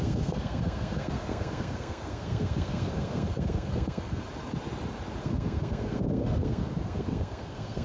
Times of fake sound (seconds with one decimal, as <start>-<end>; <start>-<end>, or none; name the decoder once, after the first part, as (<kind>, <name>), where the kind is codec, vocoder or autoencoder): 0.0-4.2 (codec, SNAC); 5.2-7.8